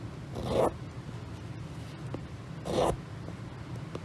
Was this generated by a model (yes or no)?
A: no